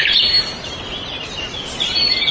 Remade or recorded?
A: recorded